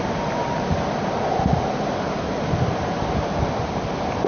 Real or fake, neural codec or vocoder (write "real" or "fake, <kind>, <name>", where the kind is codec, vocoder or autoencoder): real